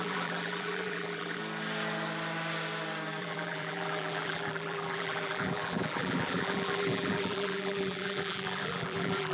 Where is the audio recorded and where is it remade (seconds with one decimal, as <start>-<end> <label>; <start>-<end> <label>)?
0.0-1.4 remade; 1.4-3.2 recorded; 3.2-9.3 remade

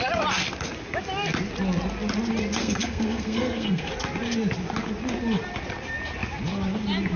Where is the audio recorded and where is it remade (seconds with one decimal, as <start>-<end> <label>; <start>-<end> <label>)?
0.0-2.6 recorded; 2.6-3.9 remade; 3.9-7.2 recorded